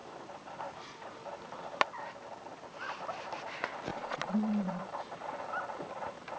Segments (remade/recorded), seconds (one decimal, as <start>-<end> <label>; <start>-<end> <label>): 0.0-3.9 recorded; 3.9-4.8 remade; 4.8-6.4 recorded